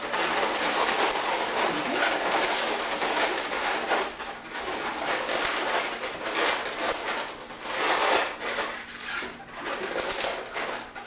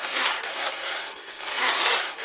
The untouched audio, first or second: first